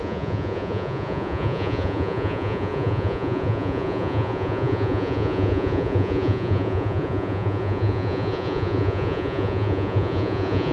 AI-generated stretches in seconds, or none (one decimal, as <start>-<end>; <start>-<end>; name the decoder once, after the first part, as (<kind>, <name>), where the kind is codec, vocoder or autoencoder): 0.0-10.7 (vocoder, Vocos)